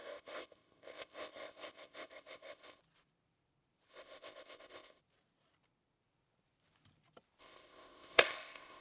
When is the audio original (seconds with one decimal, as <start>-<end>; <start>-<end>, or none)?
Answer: 2.8-3.9; 5.0-7.4

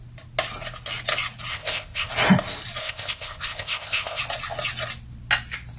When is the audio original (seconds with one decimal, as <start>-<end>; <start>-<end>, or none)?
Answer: 0.0-1.5; 2.1-2.8; 4.2-5.8

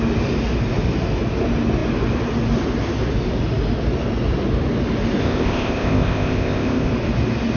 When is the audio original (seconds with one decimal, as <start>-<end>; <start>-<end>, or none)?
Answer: 0.0-5.2; 6.9-7.6

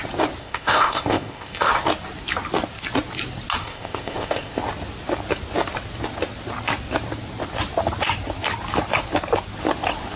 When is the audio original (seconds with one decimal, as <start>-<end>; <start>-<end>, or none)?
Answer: 0.0-0.4; 1.7-3.6; 4.6-10.2

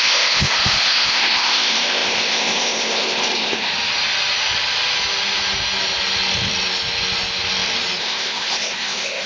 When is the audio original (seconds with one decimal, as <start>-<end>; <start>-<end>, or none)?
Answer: 3.7-8.0

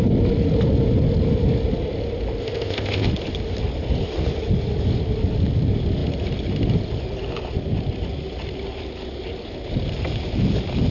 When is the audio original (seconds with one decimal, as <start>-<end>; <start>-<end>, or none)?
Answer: 0.0-2.4; 3.1-10.9

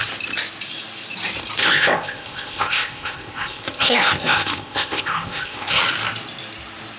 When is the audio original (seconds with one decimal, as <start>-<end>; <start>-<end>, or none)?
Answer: 0.0-1.6; 5.8-7.0